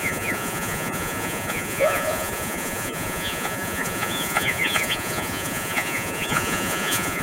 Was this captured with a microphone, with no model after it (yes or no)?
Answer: no